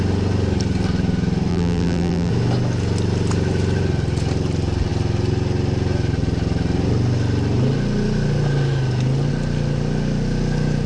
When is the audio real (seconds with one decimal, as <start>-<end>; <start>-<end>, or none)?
0.0-1.5; 2.3-10.9